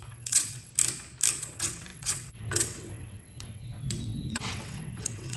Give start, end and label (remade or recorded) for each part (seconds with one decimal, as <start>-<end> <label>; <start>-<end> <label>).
0.0-0.7 remade; 0.7-1.4 recorded; 1.4-5.4 remade